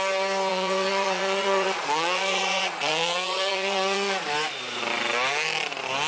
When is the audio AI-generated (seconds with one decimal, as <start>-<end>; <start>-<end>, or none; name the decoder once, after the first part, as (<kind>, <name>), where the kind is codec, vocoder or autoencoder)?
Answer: 0.5-4.2 (vocoder, Vocos)